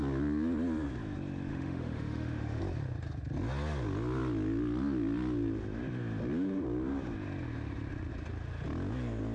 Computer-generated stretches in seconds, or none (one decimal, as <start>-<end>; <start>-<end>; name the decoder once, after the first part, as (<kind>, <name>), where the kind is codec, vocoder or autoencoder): 1.5-2.6 (autoencoder, DAC-VAE)

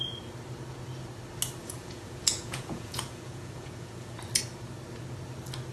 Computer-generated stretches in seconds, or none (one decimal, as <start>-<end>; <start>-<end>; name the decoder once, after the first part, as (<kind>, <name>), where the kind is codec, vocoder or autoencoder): 1.6-4.2 (vocoder, Vocos)